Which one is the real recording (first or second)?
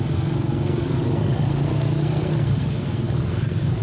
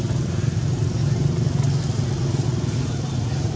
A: second